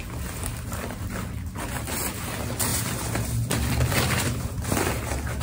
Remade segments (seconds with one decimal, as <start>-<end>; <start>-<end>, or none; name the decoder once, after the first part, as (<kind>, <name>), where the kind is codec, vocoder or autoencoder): 2.7-5.0 (vocoder, BigVGAN v2)